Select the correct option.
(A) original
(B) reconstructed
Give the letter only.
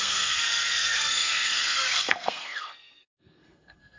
B